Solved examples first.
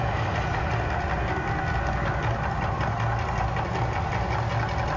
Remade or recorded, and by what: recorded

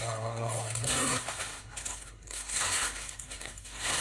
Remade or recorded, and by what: remade, codec, SNAC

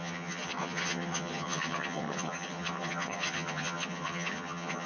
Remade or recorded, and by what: remade, vocoder, HiFi-GAN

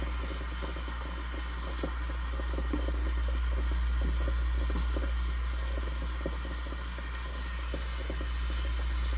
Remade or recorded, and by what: recorded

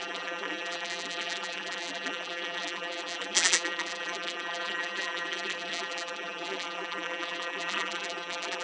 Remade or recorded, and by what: remade, vocoder, BigVGAN v2